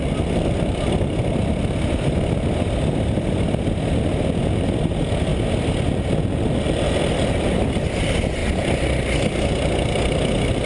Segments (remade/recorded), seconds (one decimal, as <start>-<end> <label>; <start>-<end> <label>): 0.0-10.7 recorded